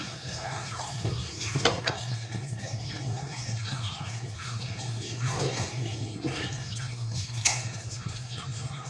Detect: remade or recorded remade